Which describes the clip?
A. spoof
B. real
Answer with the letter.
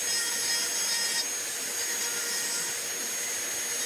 B